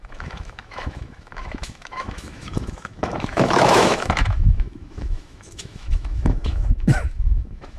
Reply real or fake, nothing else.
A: fake